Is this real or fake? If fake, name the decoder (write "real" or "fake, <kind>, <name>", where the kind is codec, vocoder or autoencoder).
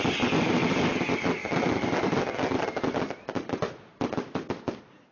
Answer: real